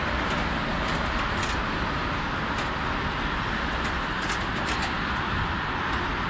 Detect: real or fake real